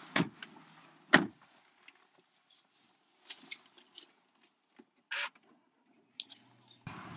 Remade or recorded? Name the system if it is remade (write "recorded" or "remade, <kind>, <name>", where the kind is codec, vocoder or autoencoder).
recorded